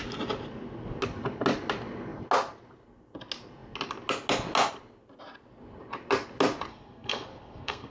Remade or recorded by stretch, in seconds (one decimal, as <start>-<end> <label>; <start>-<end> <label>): 0.0-6.7 recorded; 6.7-7.9 remade